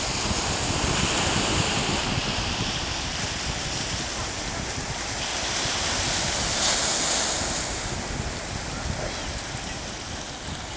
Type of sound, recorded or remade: recorded